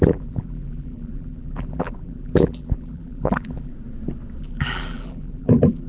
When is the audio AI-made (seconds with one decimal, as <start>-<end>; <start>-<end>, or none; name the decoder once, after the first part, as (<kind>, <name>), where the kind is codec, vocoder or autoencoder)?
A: 0.0-3.7 (vocoder, BigVGAN v2); 4.4-5.9